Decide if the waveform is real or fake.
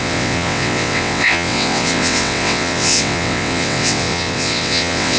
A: fake